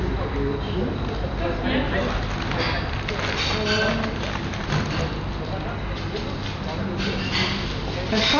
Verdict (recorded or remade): recorded